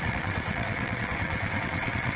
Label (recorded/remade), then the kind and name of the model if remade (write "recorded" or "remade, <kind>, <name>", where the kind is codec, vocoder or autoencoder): remade, vocoder, WaveNeXt